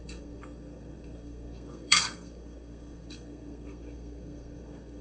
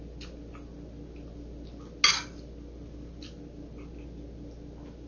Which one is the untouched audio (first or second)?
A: second